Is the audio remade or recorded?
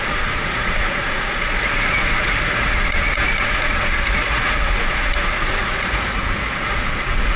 remade